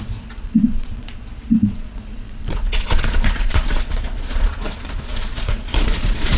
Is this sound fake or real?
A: fake